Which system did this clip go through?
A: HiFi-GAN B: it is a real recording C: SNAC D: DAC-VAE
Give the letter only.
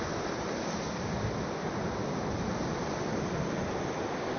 B